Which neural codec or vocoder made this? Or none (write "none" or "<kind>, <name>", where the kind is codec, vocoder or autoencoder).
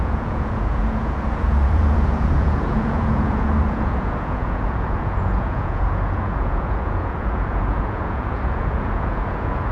vocoder, Vocos